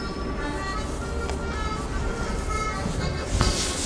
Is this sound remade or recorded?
recorded